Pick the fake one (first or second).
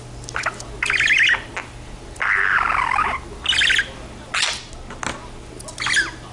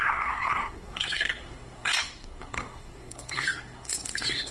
second